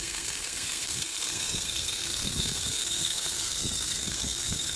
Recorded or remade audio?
remade